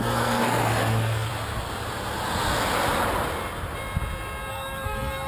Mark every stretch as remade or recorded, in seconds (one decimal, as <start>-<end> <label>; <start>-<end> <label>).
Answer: 0.0-1.3 remade; 1.3-4.5 recorded; 4.5-5.3 remade